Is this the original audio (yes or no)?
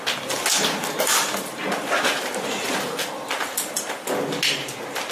yes